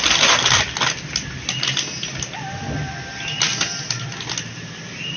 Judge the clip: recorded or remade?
recorded